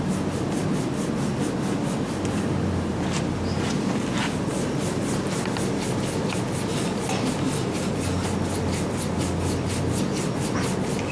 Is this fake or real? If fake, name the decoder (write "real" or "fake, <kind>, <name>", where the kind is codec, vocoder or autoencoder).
real